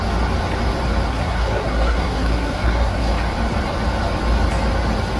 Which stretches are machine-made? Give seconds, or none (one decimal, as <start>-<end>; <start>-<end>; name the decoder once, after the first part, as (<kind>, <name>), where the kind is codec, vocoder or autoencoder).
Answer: 1.1-3.1 (codec, SNAC)